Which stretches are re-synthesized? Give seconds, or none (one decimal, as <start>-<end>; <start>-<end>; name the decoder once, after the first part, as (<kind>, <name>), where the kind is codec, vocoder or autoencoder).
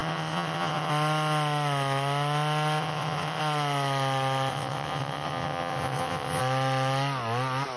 0.0-0.9 (vocoder, WaveNeXt); 2.8-3.4; 4.5-6.4